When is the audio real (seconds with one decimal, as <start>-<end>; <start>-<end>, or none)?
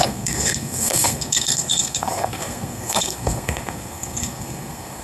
none